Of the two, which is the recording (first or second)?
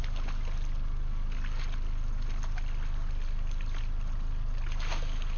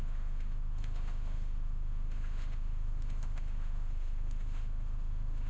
first